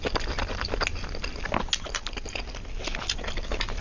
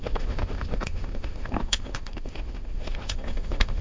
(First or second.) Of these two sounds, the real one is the first